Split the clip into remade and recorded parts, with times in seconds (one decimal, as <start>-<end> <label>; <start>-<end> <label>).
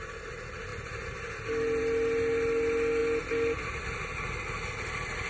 0.0-5.3 recorded